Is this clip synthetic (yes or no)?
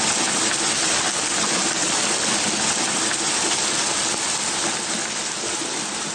no